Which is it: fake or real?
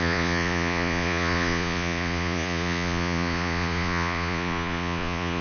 fake